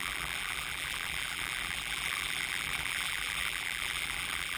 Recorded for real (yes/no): no